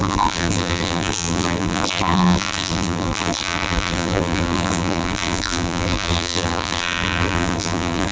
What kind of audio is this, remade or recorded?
remade